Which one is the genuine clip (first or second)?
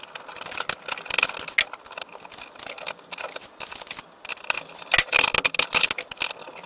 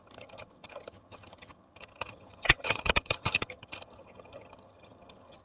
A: first